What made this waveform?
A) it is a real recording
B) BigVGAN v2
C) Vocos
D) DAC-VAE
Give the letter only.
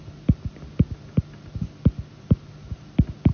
A